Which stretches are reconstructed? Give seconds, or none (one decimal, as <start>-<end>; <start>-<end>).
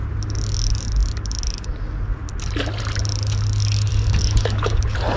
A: 3.9-4.8